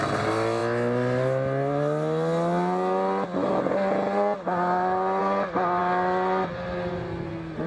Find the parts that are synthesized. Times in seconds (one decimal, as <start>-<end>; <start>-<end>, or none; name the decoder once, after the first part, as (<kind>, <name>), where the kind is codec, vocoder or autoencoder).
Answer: none